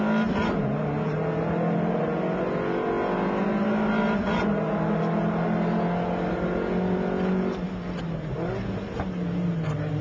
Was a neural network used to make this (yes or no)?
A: no